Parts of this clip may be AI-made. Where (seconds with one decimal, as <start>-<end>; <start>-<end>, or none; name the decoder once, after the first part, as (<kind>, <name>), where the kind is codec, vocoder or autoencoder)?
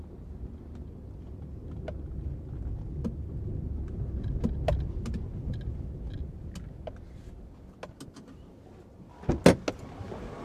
none